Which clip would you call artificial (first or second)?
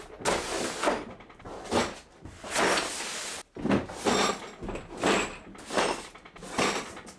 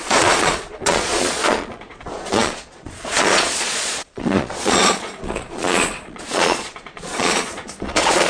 second